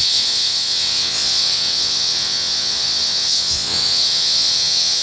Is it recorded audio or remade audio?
remade